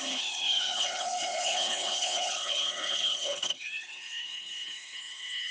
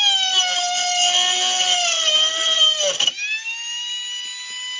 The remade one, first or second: first